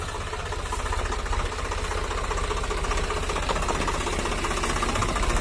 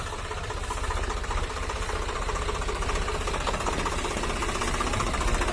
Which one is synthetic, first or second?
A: second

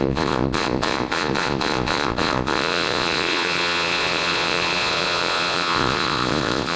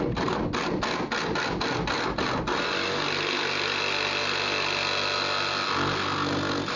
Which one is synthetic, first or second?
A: first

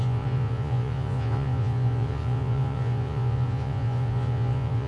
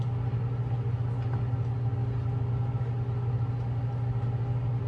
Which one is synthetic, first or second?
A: first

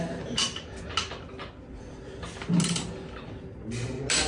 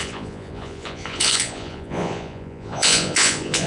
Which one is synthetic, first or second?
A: second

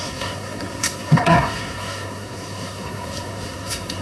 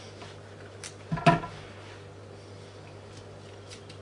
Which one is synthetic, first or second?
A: first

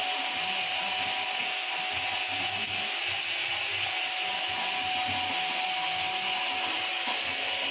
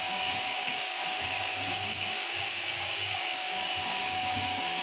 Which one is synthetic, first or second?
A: second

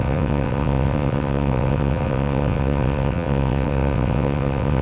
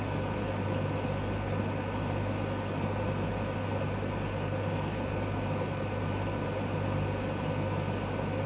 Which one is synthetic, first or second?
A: first